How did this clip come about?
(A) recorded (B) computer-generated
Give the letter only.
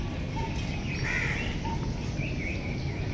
A